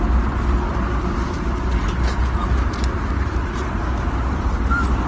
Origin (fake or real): real